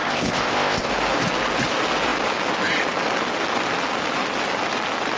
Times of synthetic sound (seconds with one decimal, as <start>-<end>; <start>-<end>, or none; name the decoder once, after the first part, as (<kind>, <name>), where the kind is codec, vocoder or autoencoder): 0.0-0.9 (codec, ZipCodec)